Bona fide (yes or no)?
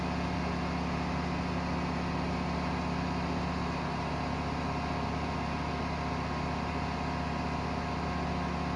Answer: yes